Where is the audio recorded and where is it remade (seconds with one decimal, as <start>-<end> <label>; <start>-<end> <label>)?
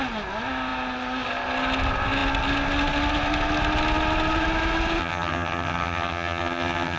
0.0-5.0 recorded; 5.0-7.0 remade